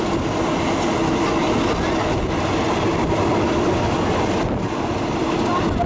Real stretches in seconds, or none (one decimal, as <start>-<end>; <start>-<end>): 0.0-5.9